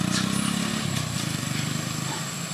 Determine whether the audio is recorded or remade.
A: recorded